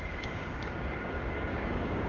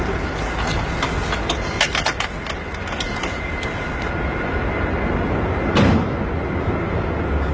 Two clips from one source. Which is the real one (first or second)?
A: second